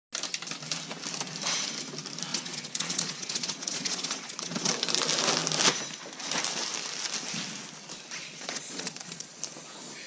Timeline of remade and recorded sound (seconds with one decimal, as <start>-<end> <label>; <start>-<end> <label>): 0.0-2.3 recorded; 2.3-4.7 remade; 4.7-8.2 recorded; 8.2-9.4 remade; 9.4-10.1 recorded